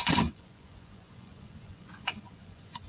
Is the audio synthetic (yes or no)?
yes